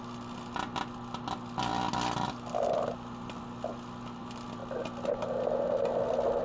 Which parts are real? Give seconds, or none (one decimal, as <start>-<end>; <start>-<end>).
0.0-6.4